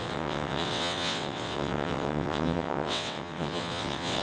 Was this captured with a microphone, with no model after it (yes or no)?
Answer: no